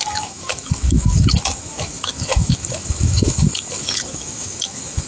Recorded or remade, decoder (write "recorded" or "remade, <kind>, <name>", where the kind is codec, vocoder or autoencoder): remade, autoencoder, DAC-VAE